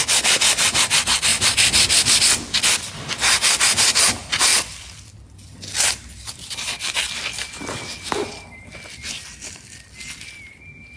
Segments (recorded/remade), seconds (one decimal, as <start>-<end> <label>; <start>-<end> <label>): 0.0-1.3 recorded; 1.3-2.2 remade; 2.2-4.5 recorded; 4.5-7.0 remade; 7.0-8.2 recorded; 8.2-9.1 remade; 9.1-11.0 recorded